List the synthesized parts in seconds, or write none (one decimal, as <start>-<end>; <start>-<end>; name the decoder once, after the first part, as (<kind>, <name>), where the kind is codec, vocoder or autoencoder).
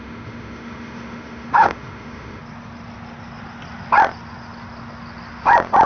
0.0-2.4 (autoencoder, DAC-VAE)